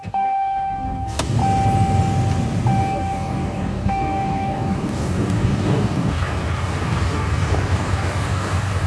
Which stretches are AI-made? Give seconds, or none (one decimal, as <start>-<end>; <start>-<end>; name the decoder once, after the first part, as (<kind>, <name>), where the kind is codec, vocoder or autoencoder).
0.0-1.4 (codec, DAC); 2.8-8.9